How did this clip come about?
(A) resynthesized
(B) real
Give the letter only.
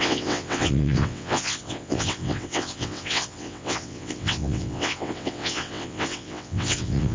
A